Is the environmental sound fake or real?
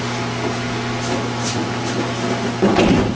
real